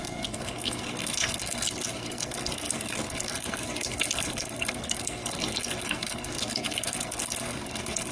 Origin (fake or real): fake